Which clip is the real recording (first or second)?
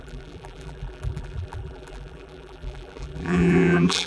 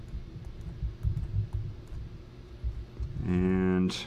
second